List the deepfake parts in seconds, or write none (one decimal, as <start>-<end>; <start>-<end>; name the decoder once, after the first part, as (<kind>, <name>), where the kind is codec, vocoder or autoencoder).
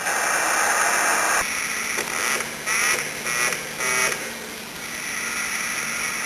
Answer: none